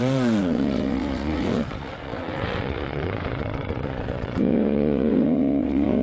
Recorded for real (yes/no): no